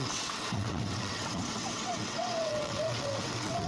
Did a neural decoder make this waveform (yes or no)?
yes